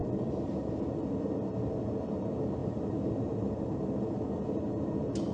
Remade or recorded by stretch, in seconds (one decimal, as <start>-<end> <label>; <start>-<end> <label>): 0.0-0.9 remade; 0.9-2.6 recorded; 2.6-4.2 remade; 4.2-5.3 recorded